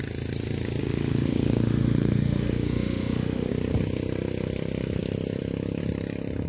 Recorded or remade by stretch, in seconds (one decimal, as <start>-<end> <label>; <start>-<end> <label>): 0.0-0.8 recorded; 0.8-3.5 remade; 3.5-6.5 recorded